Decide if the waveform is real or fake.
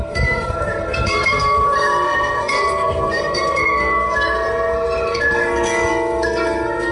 fake